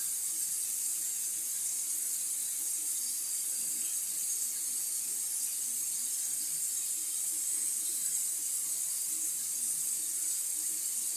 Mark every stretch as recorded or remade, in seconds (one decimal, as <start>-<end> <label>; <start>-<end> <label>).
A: 0.0-0.9 recorded; 0.9-1.5 remade; 1.5-4.2 recorded; 4.2-5.1 remade; 5.1-11.2 recorded

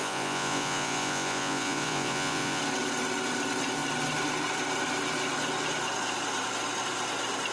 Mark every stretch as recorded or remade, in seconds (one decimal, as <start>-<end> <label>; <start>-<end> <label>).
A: 0.0-2.6 remade; 2.6-7.5 recorded